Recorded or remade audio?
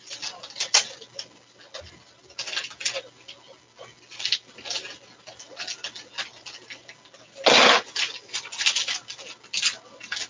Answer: recorded